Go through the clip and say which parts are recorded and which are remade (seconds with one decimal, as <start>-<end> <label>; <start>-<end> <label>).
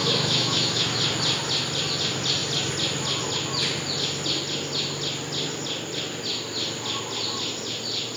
0.0-1.0 remade; 1.0-8.2 recorded